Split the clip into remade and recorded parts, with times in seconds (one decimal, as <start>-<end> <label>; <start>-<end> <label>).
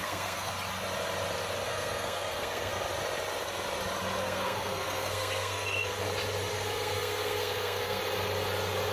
0.0-0.5 remade; 0.5-1.7 recorded; 1.7-2.7 remade; 2.7-4.2 recorded; 4.2-6.0 remade; 6.0-6.5 recorded; 6.5-8.0 remade; 8.0-8.9 recorded